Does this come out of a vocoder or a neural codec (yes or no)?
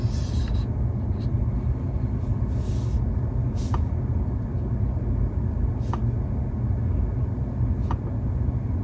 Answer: no